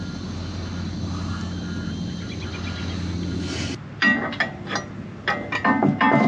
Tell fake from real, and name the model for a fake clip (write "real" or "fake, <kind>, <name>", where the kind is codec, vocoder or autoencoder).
real